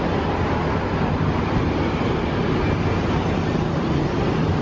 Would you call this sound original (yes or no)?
yes